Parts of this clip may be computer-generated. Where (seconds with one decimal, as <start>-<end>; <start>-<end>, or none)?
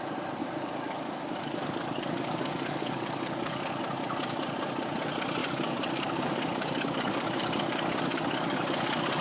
0.4-3.8; 5.4-8.6